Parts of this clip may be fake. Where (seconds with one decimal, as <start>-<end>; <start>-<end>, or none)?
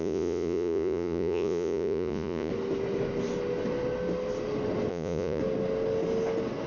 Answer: 0.0-2.5; 4.9-5.4